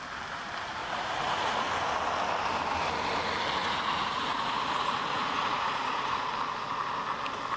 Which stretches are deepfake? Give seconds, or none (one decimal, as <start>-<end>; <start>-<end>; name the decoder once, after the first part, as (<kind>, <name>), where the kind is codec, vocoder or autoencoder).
0.8-1.7 (vocoder, Vocos); 3.6-6.2